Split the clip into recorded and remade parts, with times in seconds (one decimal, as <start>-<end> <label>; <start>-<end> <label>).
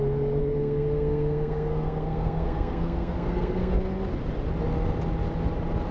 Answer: 0.0-0.4 recorded; 0.4-3.8 remade; 3.8-5.9 recorded